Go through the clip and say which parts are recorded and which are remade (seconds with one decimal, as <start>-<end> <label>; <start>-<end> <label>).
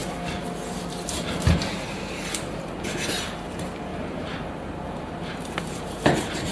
0.0-2.4 recorded; 2.4-6.5 remade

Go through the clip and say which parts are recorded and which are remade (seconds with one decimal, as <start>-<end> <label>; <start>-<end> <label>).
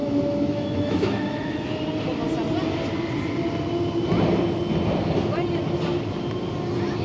0.0-1.6 remade; 1.6-7.0 recorded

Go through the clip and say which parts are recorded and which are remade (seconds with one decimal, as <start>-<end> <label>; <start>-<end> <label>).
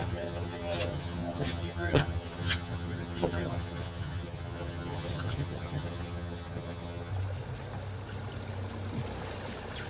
0.0-7.1 remade; 7.1-9.9 recorded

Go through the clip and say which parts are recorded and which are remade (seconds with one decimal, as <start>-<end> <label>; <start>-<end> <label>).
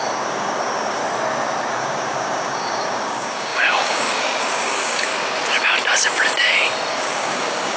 0.0-1.0 remade; 1.0-1.7 recorded; 1.7-5.1 remade; 5.1-6.9 recorded; 6.9-7.8 remade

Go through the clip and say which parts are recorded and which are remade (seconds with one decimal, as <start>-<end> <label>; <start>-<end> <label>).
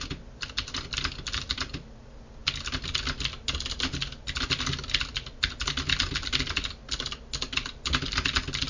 0.0-8.7 recorded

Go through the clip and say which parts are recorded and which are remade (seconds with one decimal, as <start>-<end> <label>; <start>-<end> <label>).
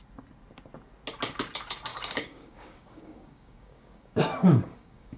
0.0-1.9 recorded; 1.9-5.2 remade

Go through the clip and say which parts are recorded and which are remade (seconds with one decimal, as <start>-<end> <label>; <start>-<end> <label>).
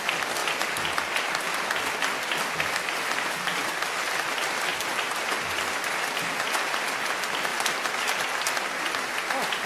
0.0-0.4 remade; 0.4-1.8 recorded; 1.8-7.5 remade; 7.5-9.7 recorded